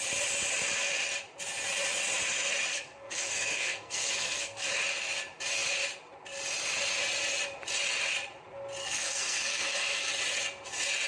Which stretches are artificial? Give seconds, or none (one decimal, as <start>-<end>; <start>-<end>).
2.7-4.7; 8.8-10.1